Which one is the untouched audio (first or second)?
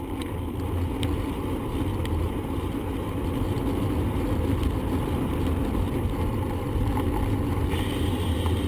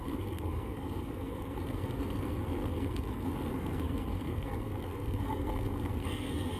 first